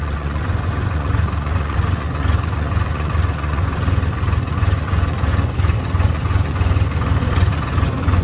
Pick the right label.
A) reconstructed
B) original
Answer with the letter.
A